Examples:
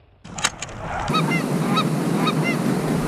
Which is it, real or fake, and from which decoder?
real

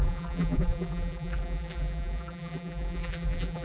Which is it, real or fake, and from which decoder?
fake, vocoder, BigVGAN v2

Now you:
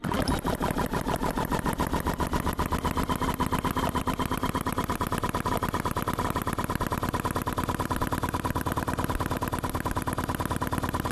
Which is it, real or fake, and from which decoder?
real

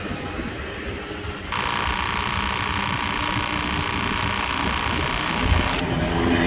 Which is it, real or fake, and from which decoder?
real